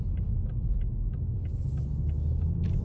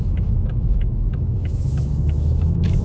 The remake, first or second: second